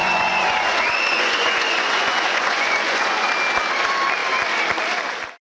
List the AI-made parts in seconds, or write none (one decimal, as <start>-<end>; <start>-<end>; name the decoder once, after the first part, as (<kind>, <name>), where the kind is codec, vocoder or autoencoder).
0.0-3.3 (vocoder, Vocos)